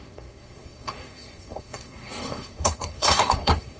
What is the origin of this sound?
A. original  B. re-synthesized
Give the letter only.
B